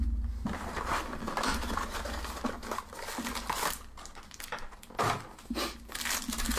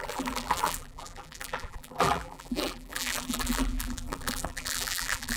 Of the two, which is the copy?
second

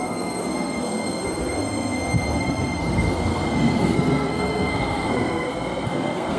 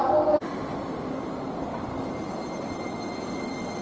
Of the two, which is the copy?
first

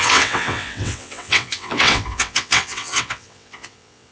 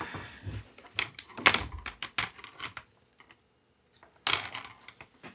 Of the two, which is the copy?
first